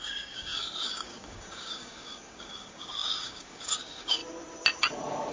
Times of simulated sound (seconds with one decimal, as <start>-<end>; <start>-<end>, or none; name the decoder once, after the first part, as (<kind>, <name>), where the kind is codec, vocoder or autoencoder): 0.0-4.2 (codec, DAC)